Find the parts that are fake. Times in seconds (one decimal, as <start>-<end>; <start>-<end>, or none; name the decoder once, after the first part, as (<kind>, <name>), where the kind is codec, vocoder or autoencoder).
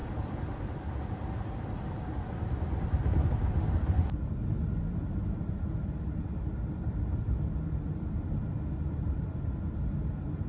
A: none